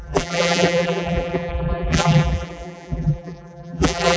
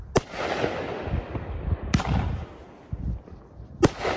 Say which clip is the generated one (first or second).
first